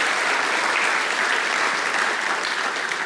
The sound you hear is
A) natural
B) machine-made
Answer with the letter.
A